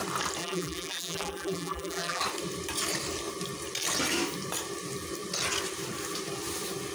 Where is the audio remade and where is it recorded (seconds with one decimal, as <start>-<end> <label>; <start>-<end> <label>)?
0.0-0.4 recorded; 0.4-2.2 remade; 2.2-6.9 recorded